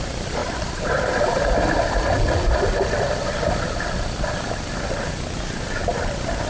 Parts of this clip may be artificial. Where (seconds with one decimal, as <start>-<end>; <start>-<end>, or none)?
none